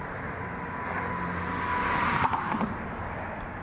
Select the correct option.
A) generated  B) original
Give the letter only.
B